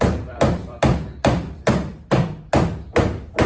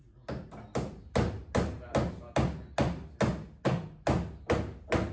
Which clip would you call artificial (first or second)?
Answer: first